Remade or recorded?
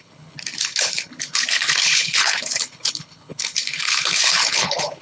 remade